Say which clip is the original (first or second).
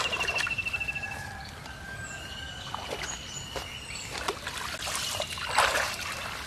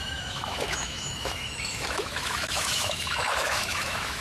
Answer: first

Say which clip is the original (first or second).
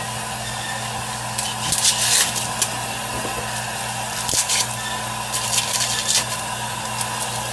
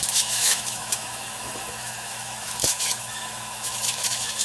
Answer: first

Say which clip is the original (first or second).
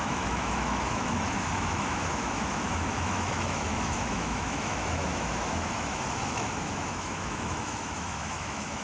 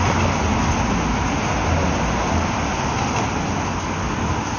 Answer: second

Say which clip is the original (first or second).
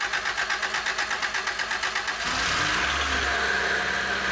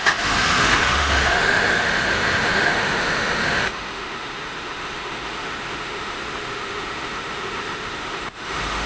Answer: first